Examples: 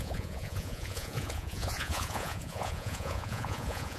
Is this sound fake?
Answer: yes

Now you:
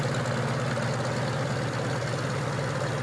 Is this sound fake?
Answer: no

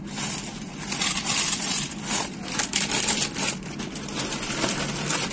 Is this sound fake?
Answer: no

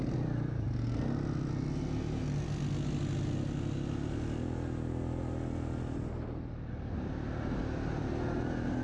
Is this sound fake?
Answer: no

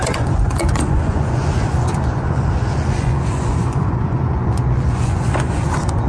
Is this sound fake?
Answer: yes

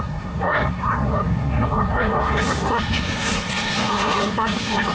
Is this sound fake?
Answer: yes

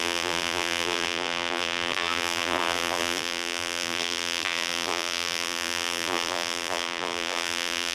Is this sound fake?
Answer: yes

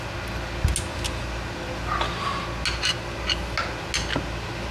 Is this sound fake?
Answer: no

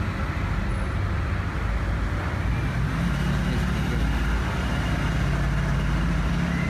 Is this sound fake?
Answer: no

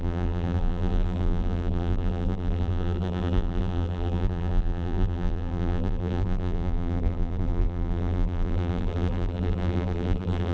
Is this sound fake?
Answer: yes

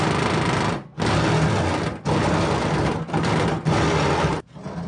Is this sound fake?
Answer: no